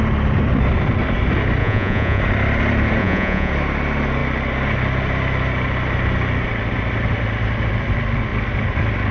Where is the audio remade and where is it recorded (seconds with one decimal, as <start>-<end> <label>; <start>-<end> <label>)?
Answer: 0.0-1.6 recorded; 1.6-2.2 remade; 2.2-3.0 recorded; 3.0-3.5 remade; 3.5-9.1 recorded